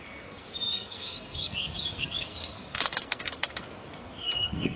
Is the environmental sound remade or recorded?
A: remade